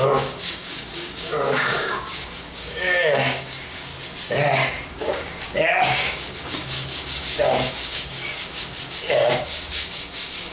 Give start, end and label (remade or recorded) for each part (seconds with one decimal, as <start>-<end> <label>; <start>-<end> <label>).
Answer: 0.0-3.9 remade; 3.9-4.7 recorded; 4.7-10.5 remade